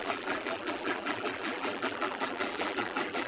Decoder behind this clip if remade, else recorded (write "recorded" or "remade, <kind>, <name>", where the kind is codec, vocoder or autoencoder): remade, vocoder, BigVGAN v2